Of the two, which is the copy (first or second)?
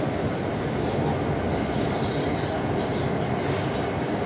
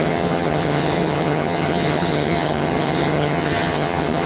second